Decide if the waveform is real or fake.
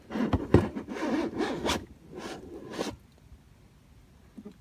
real